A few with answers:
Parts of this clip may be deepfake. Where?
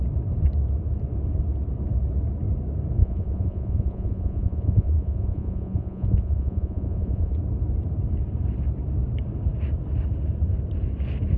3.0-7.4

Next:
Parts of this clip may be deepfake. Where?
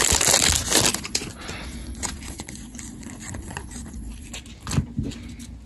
0.9-4.3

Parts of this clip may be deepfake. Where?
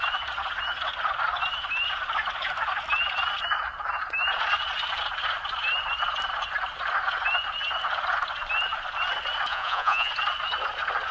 9.5-10.1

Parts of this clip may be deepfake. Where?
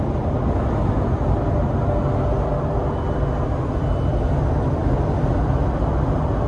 none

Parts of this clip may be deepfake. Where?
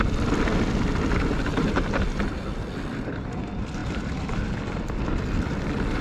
none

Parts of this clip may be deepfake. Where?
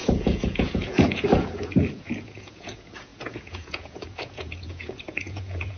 0.0-5.8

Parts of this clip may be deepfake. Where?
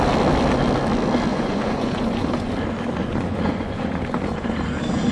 1.3-2.5; 3.0-4.0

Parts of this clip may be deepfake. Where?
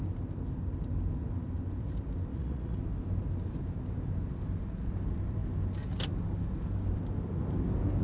2.3-2.8